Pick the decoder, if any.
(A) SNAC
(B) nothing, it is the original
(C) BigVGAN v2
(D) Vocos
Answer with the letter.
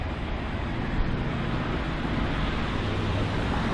B